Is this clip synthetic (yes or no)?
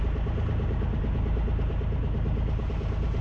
no